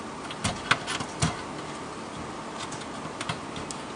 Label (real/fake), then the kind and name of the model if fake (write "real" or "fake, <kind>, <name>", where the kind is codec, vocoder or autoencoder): real